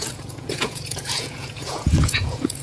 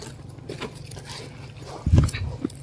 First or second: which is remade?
first